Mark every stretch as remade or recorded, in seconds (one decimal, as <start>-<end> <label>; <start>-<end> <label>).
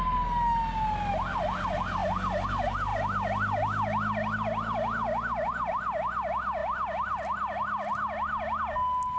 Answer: 0.0-9.2 recorded